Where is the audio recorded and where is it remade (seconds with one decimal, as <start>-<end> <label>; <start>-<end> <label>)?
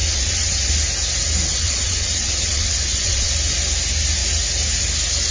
0.0-0.7 remade; 0.7-1.5 recorded; 1.5-3.3 remade; 3.3-5.3 recorded